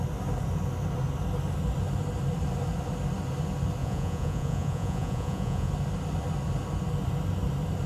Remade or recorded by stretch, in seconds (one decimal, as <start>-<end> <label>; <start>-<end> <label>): 0.0-3.8 recorded; 3.8-5.7 remade; 5.7-7.9 recorded

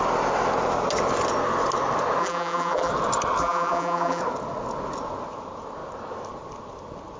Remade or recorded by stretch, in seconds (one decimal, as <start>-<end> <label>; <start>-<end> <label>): 0.0-2.2 recorded; 2.2-2.9 remade; 2.9-3.4 recorded; 3.4-4.2 remade; 4.2-7.2 recorded

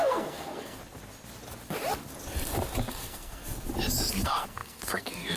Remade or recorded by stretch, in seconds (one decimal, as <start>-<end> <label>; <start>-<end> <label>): 0.0-0.8 remade; 0.8-2.9 recorded; 2.9-3.4 remade; 3.4-4.1 recorded; 4.1-5.4 remade

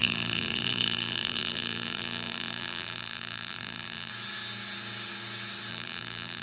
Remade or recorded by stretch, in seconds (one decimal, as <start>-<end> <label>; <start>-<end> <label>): 0.0-4.1 remade; 4.1-5.7 recorded; 5.7-6.4 remade

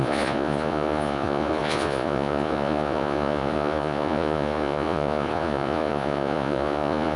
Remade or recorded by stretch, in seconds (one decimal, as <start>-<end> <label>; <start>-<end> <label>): 0.0-7.2 remade

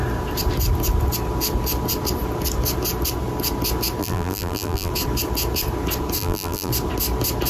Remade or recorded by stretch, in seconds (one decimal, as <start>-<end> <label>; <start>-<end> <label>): 0.0-4.0 recorded; 4.0-4.9 remade; 4.9-6.2 recorded; 6.2-6.7 remade; 6.7-7.5 recorded

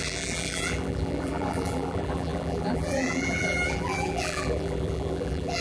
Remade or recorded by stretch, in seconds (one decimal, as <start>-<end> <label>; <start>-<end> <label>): 0.0-5.6 remade

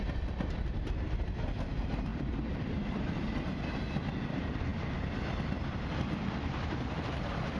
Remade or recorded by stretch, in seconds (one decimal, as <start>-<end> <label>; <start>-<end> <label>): 0.0-4.7 remade; 4.7-5.9 recorded; 5.9-7.6 remade